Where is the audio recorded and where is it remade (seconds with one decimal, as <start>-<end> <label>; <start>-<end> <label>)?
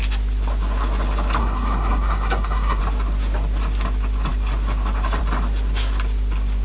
0.0-1.4 recorded; 1.4-2.8 remade; 2.8-6.6 recorded